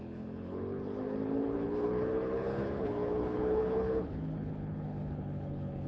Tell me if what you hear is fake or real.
fake